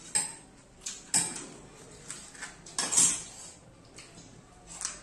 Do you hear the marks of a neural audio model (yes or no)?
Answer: no